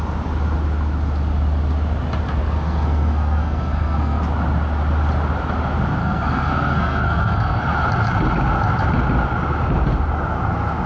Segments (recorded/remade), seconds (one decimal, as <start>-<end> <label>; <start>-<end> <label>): 0.0-2.4 recorded; 2.4-4.2 remade; 4.2-6.0 recorded; 6.0-7.6 remade; 7.6-10.9 recorded